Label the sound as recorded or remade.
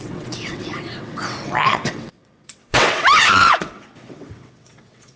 remade